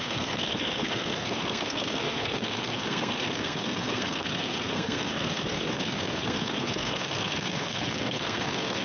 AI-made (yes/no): yes